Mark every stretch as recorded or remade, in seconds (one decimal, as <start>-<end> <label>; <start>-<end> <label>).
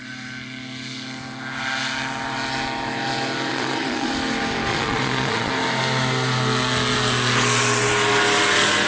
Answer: 0.0-3.5 recorded; 3.5-4.1 remade; 4.1-4.7 recorded; 4.7-5.5 remade; 5.5-8.9 recorded